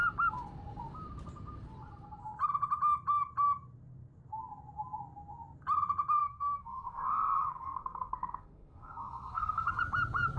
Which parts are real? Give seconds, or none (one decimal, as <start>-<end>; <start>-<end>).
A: 0.0-6.2; 9.8-10.4